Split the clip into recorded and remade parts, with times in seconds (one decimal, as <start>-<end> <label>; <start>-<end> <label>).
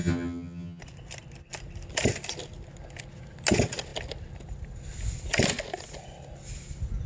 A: 0.0-0.8 remade; 0.8-7.1 recorded